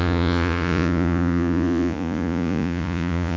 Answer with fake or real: fake